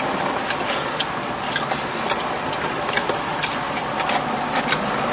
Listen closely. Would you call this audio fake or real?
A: real